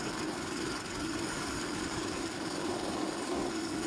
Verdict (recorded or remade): remade